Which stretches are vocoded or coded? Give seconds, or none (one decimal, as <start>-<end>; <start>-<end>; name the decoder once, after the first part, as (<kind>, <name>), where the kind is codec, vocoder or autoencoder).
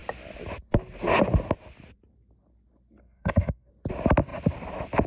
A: 3.0-3.7 (codec, SNAC)